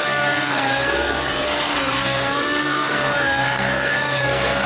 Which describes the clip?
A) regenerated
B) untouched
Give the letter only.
A